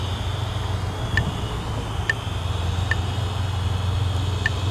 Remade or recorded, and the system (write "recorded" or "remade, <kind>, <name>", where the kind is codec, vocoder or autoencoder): recorded